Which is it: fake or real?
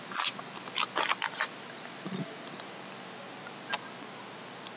real